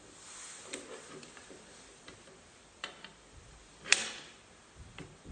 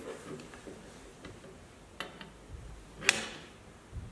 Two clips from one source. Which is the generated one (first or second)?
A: first